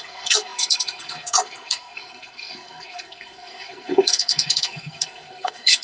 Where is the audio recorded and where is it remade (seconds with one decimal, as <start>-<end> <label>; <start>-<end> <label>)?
0.0-5.8 remade